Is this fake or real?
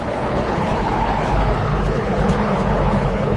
fake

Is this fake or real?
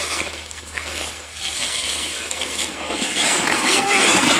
fake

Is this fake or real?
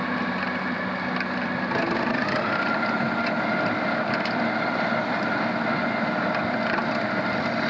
real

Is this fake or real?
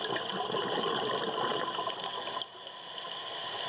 real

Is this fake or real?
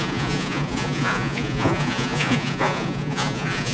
fake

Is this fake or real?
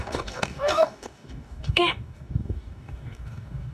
fake